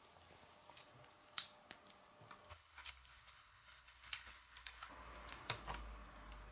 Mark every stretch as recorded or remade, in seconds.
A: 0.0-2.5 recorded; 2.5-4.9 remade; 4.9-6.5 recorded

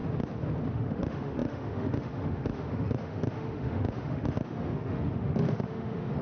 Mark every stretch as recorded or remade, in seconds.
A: 0.0-0.7 recorded; 0.7-6.2 remade

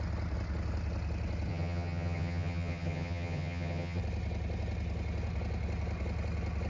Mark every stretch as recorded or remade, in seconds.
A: 0.0-1.5 recorded; 1.5-4.0 remade; 4.0-6.7 recorded